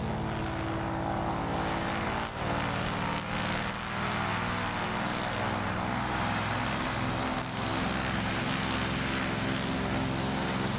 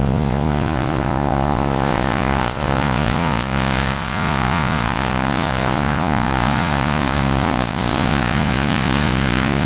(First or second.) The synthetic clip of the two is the second